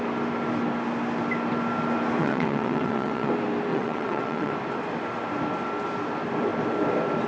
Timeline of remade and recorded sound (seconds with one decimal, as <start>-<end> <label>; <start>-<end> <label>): 0.0-2.2 recorded; 2.2-3.3 remade; 3.3-3.7 recorded; 3.7-4.5 remade; 4.5-7.3 recorded